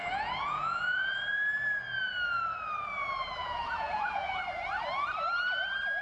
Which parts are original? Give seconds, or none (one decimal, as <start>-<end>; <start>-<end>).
1.2-3.4; 4.4-6.0